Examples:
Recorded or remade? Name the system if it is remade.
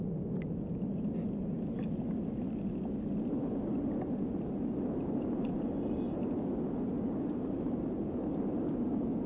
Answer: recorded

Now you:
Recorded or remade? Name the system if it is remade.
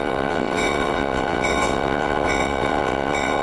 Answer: remade, vocoder, WaveNeXt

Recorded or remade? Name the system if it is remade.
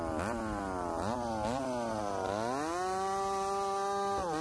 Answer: recorded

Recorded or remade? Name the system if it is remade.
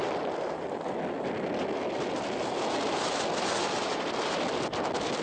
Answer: recorded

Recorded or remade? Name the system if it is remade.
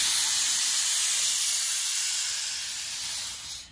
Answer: recorded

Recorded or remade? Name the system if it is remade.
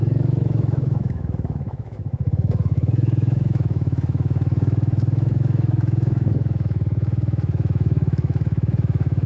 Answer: remade, autoencoder, DAC-VAE